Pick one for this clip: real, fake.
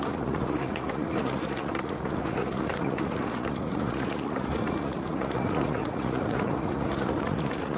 fake